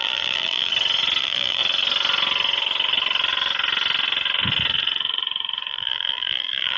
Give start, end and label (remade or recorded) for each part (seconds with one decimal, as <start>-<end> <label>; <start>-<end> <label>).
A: 0.0-0.7 remade; 0.7-1.2 recorded; 1.2-1.6 remade; 1.6-5.7 recorded; 5.7-6.8 remade